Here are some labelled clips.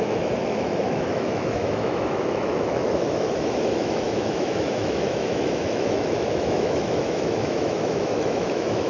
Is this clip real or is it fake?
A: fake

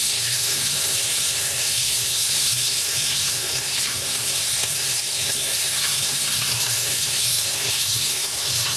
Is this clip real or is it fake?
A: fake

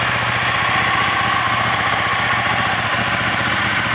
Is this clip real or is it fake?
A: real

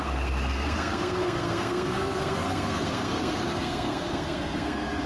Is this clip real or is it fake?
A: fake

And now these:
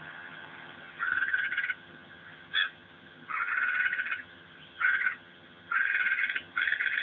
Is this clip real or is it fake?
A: fake